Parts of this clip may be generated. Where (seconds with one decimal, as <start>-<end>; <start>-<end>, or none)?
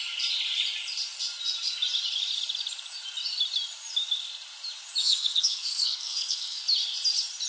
5.0-6.6